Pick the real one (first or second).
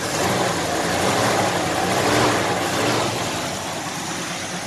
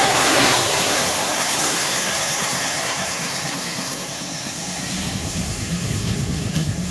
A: first